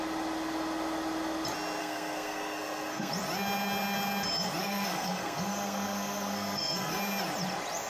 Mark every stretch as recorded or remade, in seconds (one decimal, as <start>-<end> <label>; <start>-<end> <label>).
0.0-1.8 recorded; 1.8-3.1 remade; 3.1-4.6 recorded; 4.6-7.0 remade; 7.0-7.9 recorded